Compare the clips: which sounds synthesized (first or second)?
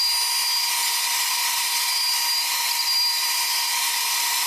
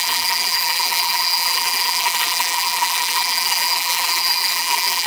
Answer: second